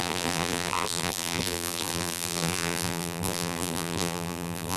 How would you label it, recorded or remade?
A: remade